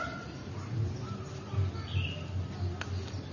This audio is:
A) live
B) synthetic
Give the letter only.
A